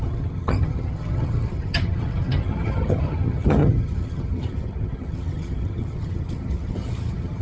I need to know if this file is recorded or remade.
remade